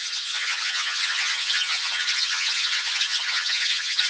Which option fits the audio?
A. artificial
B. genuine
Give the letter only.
A